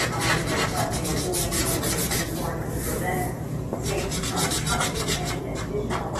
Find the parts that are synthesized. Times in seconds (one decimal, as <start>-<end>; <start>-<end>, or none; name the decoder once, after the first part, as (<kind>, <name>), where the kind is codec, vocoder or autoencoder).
0.0-6.2 (vocoder, BigVGAN v2)